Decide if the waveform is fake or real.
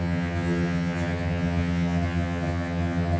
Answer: fake